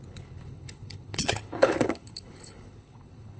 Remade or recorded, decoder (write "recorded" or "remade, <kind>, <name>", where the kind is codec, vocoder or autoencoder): remade, codec, HILCodec